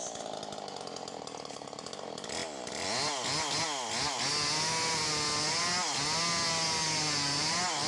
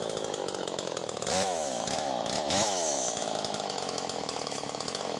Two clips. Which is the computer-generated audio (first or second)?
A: second